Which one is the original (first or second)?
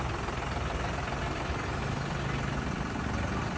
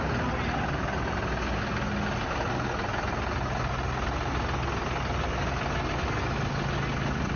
second